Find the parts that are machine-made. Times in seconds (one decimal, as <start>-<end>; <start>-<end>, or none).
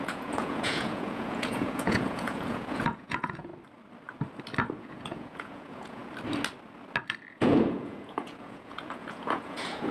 0.0-3.5; 4.8-6.0; 7.3-9.9